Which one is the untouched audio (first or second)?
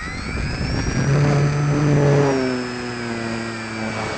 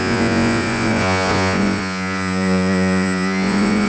first